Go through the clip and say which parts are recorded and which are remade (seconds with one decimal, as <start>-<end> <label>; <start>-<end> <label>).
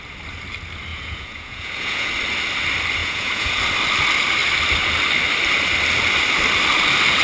0.0-0.9 recorded; 0.9-2.1 remade; 2.1-3.0 recorded; 3.0-3.6 remade; 3.6-7.2 recorded